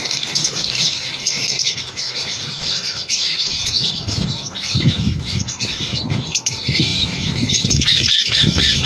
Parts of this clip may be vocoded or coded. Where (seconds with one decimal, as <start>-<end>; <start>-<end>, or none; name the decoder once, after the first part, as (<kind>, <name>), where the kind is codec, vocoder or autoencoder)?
0.0-8.9 (codec, DAC)